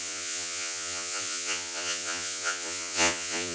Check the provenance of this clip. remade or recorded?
remade